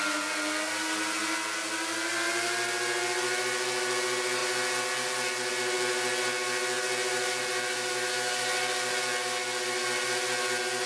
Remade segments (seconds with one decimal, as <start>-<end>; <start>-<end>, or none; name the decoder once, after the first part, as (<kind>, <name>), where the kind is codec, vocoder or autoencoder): none